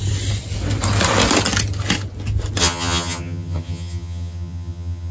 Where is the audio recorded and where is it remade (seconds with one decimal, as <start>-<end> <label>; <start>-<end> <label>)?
0.0-2.6 recorded; 2.6-5.1 remade